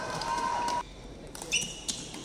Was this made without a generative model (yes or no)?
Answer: no